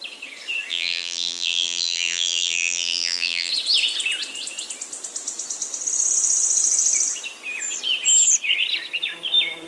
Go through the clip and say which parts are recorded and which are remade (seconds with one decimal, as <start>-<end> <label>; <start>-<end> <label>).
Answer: 0.0-0.7 recorded; 0.7-3.5 remade; 3.5-9.7 recorded